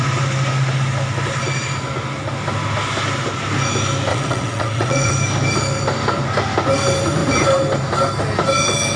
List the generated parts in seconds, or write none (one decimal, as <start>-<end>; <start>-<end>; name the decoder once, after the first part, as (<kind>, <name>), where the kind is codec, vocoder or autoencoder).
4.1-5.1 (vocoder, WaveNeXt)